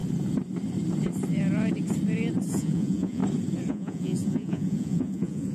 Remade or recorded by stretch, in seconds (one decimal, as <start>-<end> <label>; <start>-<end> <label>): 0.0-2.5 recorded; 2.5-3.2 remade; 3.2-3.7 recorded; 3.7-5.5 remade